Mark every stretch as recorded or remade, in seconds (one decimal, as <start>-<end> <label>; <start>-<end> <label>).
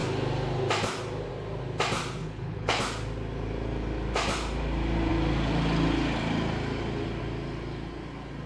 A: 0.0-2.2 recorded; 2.2-2.8 remade; 2.8-8.5 recorded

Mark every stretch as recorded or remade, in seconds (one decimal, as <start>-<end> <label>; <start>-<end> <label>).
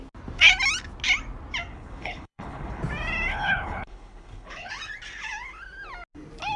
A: 0.0-1.7 recorded; 1.7-2.8 remade; 2.8-3.3 recorded; 3.3-4.7 remade; 4.7-6.6 recorded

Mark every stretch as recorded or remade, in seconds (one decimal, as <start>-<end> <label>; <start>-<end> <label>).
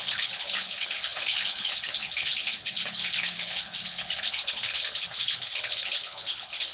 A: 0.0-6.7 remade